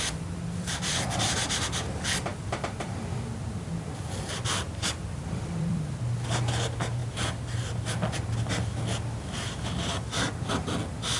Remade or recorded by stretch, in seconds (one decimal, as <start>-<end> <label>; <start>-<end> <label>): 0.0-2.3 recorded; 2.3-6.0 remade; 6.0-11.2 recorded